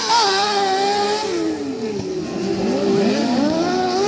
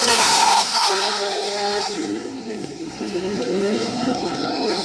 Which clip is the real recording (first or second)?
first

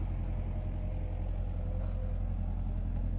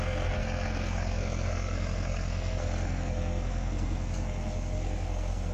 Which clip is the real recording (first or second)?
first